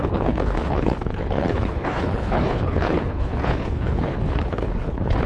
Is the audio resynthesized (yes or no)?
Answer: yes